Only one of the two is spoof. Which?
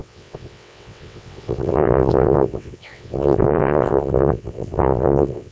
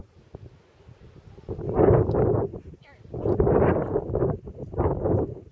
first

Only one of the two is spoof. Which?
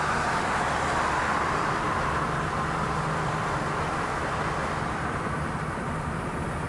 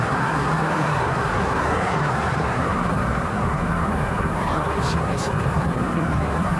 second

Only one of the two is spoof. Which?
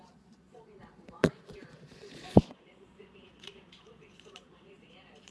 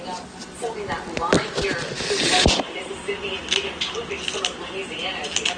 first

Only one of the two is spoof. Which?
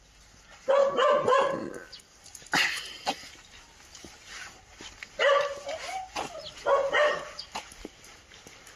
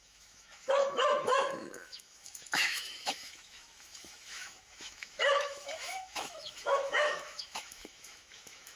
second